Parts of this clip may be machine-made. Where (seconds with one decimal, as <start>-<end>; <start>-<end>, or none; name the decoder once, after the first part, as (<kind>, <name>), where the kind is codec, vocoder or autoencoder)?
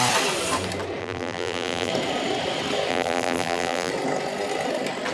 1.0-1.9 (vocoder, BigVGAN v2); 2.9-3.9